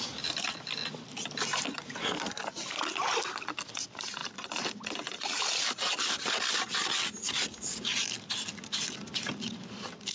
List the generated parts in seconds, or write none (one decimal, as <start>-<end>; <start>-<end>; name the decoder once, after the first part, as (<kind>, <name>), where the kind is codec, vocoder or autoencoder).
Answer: none